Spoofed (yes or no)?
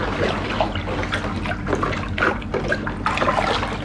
no